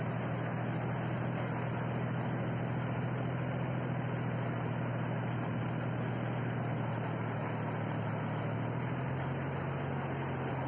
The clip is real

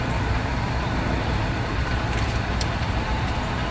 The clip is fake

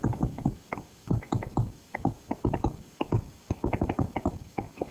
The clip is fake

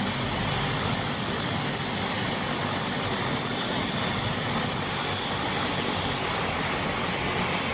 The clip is real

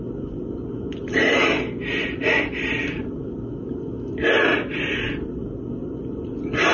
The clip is real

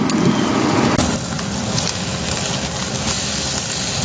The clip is real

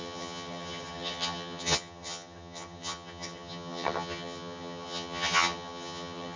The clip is fake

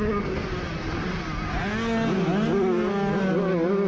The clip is real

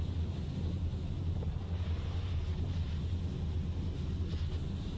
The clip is real